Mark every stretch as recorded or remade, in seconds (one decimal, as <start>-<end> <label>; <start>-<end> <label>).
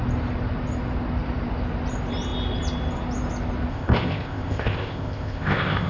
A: 0.0-3.7 recorded; 3.7-5.9 remade